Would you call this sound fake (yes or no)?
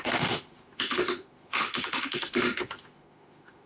yes